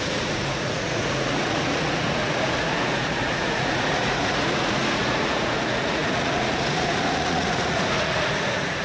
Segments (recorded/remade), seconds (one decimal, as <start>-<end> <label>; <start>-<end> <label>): 0.0-8.8 remade

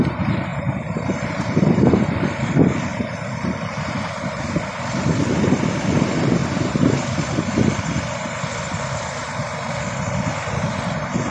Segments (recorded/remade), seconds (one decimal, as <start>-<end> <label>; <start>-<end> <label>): 0.0-0.5 recorded; 0.5-2.0 remade; 2.0-2.9 recorded; 2.9-4.4 remade; 4.4-6.4 recorded; 6.4-7.0 remade; 7.0-11.3 recorded

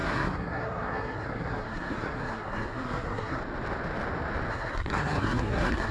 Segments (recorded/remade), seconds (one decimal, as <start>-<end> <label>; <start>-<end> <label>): 0.0-3.4 remade; 3.4-4.5 recorded; 4.5-5.9 remade

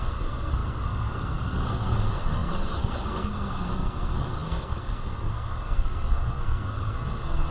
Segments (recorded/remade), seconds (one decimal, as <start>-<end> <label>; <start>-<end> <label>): 0.0-7.5 remade

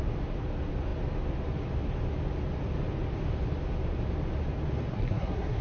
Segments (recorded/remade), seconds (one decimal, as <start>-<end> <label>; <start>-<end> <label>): 0.0-4.9 recorded; 4.9-5.6 remade

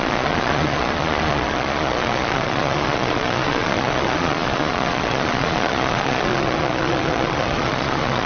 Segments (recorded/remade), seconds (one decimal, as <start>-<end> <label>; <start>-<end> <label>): 0.0-8.3 remade